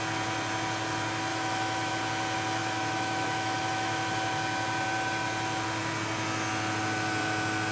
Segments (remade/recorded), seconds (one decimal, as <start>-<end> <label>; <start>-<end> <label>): 0.0-1.3 recorded; 1.3-1.9 remade; 1.9-2.6 recorded; 2.6-4.1 remade; 4.1-7.7 recorded